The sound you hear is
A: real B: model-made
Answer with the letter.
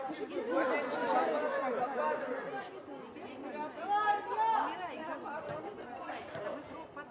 A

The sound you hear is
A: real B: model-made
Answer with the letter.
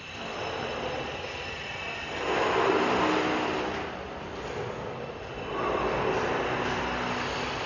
A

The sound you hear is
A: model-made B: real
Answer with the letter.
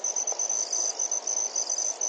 B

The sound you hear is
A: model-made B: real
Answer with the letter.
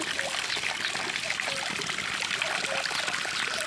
B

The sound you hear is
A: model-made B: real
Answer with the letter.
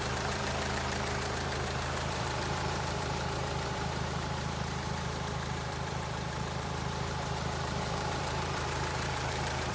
A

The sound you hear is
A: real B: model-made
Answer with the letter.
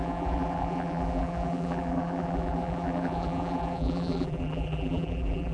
B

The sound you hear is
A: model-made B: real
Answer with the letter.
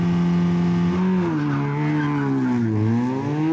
B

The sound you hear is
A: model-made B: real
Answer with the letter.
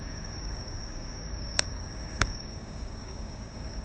A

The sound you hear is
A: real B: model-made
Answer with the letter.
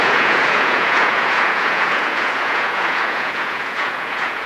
B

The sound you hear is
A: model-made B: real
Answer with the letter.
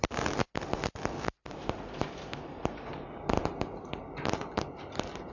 B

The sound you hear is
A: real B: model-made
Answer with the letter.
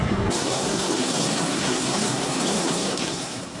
B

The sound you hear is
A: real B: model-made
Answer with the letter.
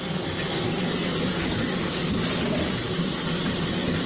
A